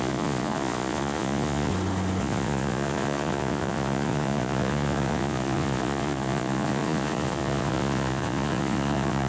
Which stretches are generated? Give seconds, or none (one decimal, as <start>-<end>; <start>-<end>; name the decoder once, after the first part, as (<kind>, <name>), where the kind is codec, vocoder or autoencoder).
0.0-1.7 (vocoder, Vocos); 2.2-9.3